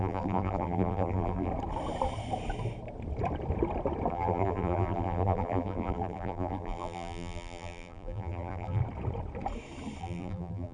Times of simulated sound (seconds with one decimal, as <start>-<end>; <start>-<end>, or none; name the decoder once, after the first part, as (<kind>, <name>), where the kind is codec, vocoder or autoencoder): 0.0-1.5 (vocoder, BigVGAN v2); 4.1-8.8; 10.0-10.7